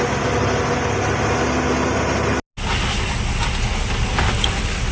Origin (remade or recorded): recorded